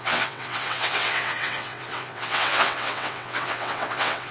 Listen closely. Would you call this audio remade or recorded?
remade